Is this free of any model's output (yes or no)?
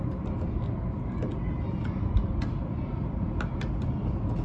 yes